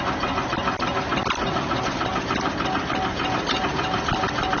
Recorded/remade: recorded